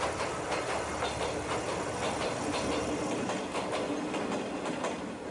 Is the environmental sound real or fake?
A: real